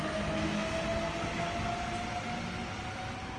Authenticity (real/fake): real